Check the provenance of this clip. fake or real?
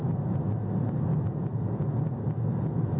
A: real